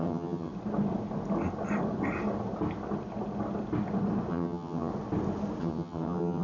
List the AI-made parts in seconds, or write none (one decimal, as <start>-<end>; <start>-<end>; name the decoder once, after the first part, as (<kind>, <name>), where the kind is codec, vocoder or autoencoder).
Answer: 0.0-0.5 (vocoder, HiFi-GAN); 4.3-4.9; 5.6-6.4